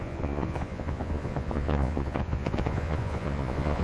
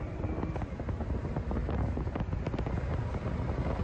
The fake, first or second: first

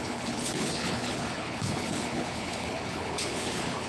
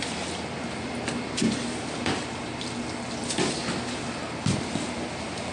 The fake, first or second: first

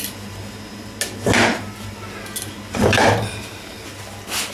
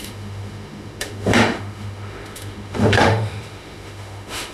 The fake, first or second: second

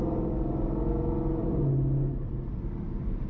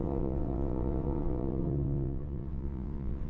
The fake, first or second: second